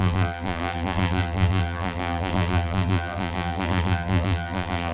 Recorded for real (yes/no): no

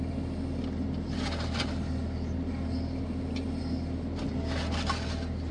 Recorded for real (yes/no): yes